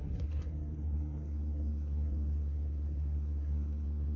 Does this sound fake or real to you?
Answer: fake